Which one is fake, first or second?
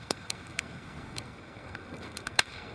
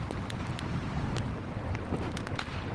first